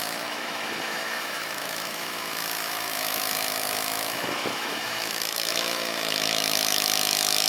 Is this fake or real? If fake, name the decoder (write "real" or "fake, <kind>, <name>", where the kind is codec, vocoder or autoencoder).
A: fake, autoencoder, DAC-VAE